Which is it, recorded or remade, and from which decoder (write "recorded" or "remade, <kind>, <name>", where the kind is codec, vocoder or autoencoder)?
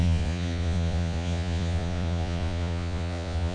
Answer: remade, vocoder, Vocos